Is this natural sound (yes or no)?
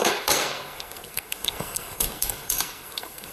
no